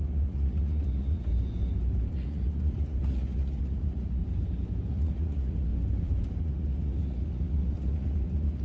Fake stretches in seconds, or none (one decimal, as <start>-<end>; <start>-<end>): 0.0-1.3; 2.1-4.2; 4.9-5.7; 6.4-8.6